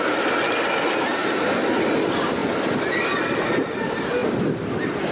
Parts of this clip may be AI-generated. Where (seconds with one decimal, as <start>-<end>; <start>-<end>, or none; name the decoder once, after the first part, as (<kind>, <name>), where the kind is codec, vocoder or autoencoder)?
none